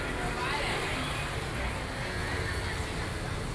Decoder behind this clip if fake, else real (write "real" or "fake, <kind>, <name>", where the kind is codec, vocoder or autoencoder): real